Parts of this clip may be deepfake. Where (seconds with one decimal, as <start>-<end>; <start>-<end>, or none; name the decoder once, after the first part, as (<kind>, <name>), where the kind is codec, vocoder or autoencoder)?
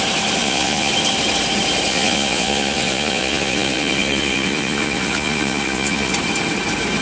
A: 0.4-0.9 (vocoder, Vocos); 1.9-6.1